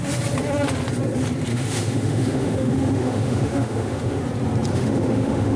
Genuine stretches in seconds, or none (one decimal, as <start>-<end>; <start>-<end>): 0.0-1.5; 4.2-4.7